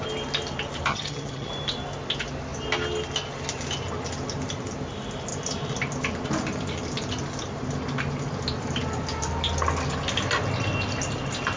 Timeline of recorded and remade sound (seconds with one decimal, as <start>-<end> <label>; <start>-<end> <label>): 0.0-0.9 recorded; 0.9-1.5 remade; 1.5-11.6 recorded